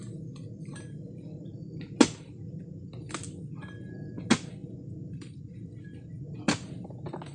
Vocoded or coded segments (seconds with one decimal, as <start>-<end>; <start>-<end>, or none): none